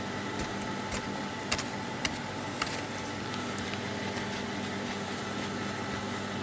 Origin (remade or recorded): recorded